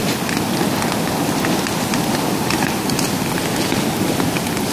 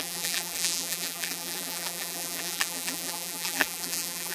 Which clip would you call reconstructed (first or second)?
second